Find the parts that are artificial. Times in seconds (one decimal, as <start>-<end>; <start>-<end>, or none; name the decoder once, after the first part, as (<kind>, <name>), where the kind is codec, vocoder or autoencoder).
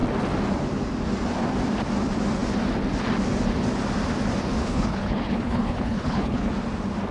4.6-6.5 (codec, HILCodec)